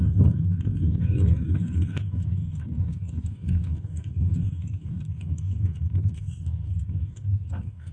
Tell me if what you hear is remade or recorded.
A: remade